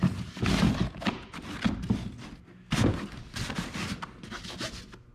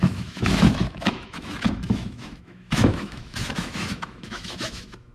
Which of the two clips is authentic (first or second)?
first